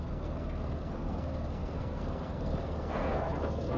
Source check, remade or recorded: remade